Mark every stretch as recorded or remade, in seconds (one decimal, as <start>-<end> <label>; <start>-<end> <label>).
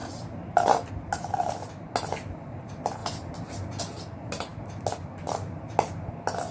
0.0-6.5 recorded